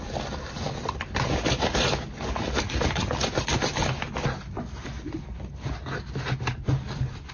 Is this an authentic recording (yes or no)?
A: yes